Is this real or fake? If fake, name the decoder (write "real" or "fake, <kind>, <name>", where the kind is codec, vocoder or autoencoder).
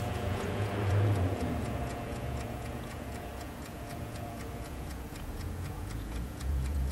fake, vocoder, Vocos